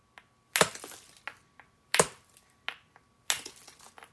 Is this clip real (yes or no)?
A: yes